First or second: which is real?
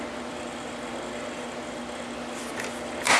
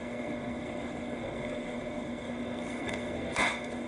first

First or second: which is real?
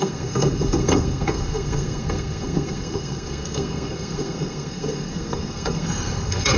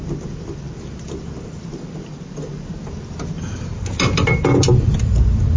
second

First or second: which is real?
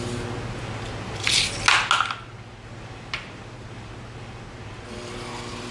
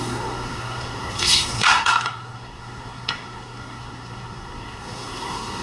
first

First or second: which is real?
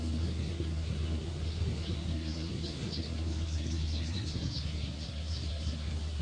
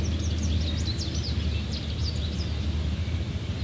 second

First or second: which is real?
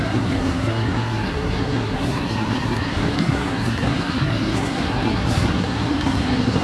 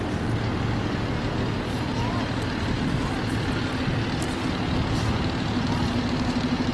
second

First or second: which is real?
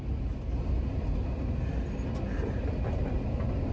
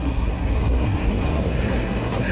first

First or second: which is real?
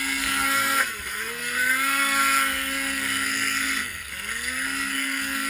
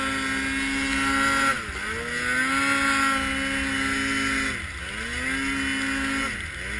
second